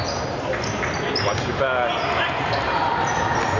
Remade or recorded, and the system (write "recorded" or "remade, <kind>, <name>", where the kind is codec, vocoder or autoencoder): recorded